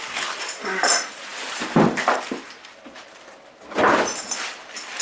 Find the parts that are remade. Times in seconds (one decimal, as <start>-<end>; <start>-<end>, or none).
1.3-3.0